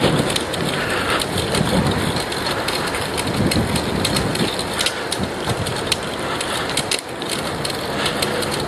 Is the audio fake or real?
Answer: real